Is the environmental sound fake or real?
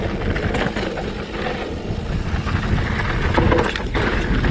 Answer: real